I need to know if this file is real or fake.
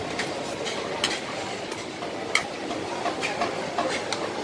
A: real